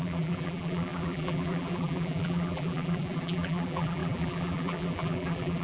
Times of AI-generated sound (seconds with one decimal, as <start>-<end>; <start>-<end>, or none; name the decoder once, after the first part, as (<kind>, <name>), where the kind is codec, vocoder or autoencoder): 0.0-5.6 (vocoder, BigVGAN v2)